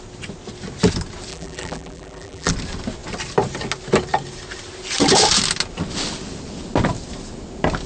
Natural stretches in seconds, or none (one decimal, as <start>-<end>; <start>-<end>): 0.0-1.3; 2.5-7.9